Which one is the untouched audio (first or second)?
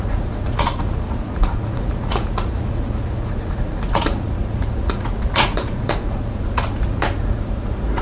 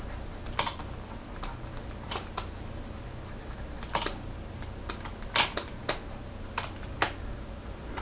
second